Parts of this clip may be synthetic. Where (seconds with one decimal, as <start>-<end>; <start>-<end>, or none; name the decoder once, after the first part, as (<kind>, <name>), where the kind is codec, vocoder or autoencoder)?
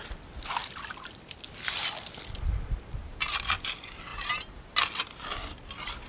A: 0.6-1.4 (vocoder, BigVGAN v2); 4.1-4.8